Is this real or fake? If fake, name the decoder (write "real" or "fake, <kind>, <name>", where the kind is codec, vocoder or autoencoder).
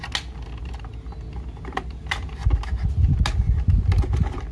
real